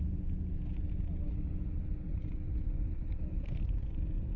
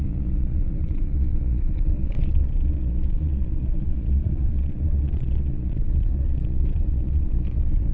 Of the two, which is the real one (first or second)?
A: first